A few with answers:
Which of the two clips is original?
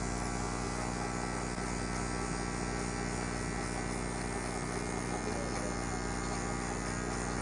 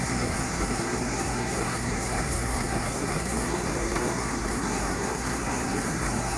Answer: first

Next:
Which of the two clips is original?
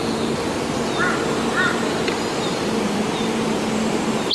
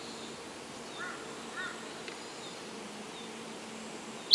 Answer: second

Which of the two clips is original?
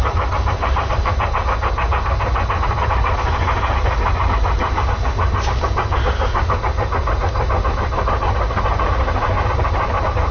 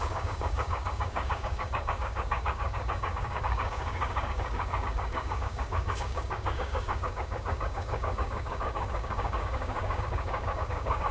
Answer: first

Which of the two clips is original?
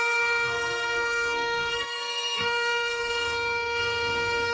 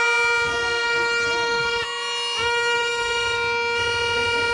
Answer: second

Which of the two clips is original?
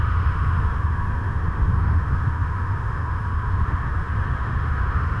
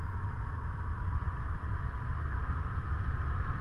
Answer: second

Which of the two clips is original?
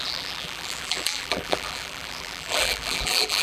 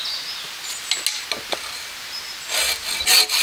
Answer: second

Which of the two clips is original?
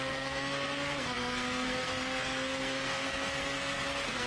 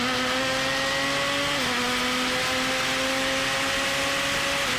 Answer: second